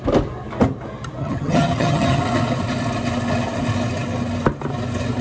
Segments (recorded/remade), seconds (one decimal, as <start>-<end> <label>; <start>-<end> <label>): 0.0-1.2 recorded; 1.2-2.2 remade; 2.2-5.2 recorded